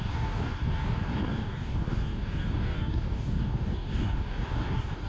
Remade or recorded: remade